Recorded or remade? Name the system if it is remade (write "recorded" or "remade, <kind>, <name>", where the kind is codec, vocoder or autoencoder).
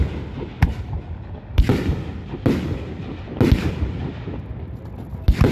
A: recorded